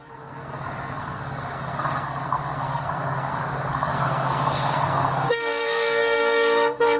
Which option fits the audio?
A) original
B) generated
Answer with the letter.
B